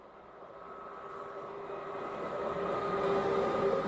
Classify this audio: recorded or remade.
recorded